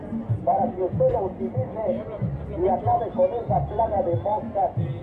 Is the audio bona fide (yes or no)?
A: no